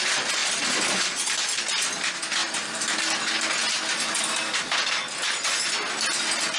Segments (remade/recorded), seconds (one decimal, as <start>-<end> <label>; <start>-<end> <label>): 0.0-2.4 recorded; 2.4-3.0 remade; 3.0-6.6 recorded